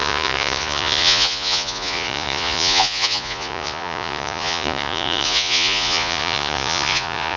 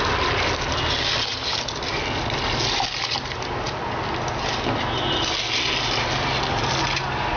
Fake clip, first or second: first